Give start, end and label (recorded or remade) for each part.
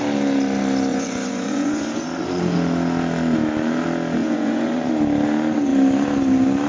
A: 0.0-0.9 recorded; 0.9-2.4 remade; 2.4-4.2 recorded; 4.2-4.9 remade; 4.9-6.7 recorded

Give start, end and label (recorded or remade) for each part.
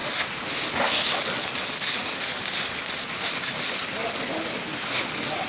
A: 0.0-3.3 recorded; 3.3-4.0 remade; 4.0-5.5 recorded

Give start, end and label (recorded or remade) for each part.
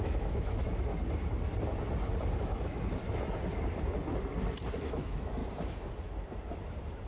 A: 0.0-0.9 remade; 0.9-2.4 recorded; 2.4-3.0 remade; 3.0-4.7 recorded; 4.7-5.4 remade; 5.4-7.1 recorded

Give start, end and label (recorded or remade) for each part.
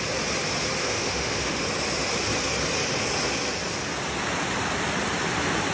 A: 0.0-0.8 recorded; 0.8-1.6 remade; 1.6-5.7 recorded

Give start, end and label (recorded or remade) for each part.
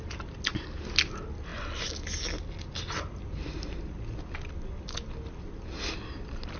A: 0.0-6.6 recorded